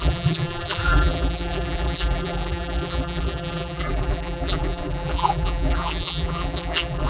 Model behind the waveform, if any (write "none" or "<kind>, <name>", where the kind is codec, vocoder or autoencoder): vocoder, BigVGAN v2